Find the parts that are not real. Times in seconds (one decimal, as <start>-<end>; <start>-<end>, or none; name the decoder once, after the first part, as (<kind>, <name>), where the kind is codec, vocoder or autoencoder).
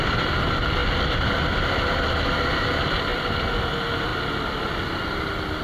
0.8-2.1 (vocoder, BigVGAN v2); 3.1-3.6; 4.1-4.6